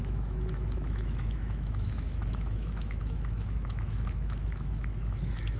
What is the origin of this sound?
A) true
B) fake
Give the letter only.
B